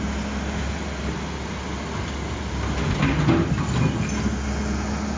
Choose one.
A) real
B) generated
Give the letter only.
A